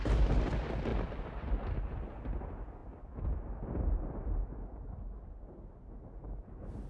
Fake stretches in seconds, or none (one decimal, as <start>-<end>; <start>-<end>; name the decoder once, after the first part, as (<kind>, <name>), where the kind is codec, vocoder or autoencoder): 2.8-3.4 (vocoder, BigVGAN v2)

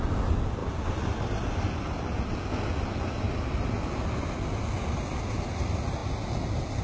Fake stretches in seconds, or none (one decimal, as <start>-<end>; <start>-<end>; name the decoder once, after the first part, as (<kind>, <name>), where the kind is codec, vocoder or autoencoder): none